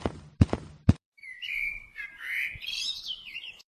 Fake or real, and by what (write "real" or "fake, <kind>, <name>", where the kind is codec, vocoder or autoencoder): fake, vocoder, BigVGAN v2